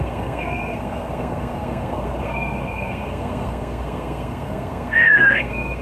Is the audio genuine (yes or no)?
no